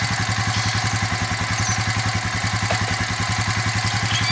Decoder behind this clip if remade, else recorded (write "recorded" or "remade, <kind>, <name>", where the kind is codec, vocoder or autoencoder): recorded